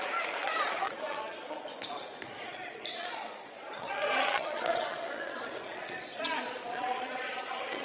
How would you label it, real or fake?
fake